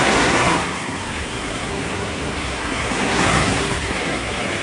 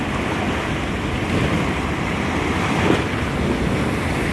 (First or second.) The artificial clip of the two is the first